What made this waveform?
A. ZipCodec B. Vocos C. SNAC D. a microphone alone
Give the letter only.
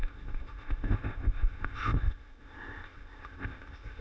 A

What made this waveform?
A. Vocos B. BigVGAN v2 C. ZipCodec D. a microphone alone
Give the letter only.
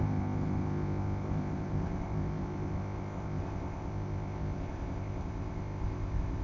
C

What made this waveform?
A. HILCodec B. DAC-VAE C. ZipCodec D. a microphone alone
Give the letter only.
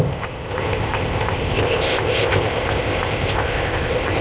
C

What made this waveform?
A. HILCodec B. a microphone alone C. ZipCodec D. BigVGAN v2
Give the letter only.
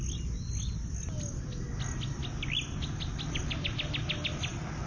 B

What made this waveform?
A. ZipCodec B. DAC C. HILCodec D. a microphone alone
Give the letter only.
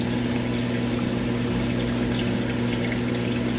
D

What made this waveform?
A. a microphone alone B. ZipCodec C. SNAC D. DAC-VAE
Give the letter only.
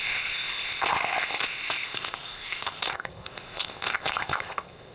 B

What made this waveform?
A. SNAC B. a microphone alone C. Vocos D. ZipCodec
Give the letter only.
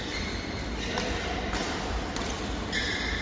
B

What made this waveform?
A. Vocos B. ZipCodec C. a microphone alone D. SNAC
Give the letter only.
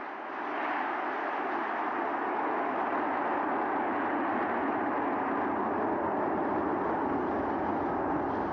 C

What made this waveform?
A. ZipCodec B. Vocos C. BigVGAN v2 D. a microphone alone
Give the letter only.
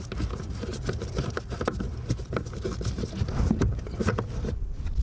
D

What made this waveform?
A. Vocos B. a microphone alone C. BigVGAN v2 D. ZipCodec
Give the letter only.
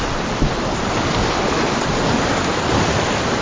B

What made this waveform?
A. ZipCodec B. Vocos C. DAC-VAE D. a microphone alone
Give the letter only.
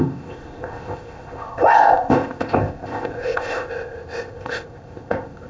A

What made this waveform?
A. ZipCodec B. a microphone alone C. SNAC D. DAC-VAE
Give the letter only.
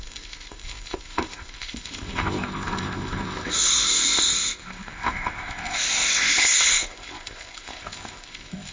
A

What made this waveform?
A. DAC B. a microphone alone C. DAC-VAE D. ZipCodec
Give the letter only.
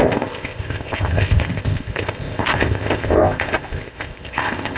D